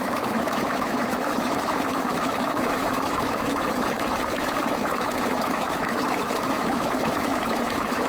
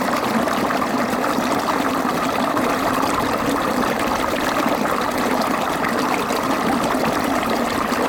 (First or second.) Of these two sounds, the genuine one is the second